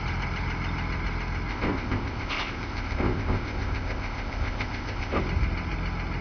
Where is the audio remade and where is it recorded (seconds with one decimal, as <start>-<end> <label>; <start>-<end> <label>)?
0.0-1.5 recorded; 1.5-5.2 remade; 5.2-6.2 recorded